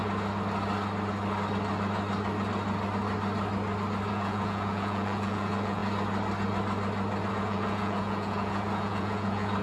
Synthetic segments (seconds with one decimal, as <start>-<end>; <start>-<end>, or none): 4.1-5.8; 7.3-9.6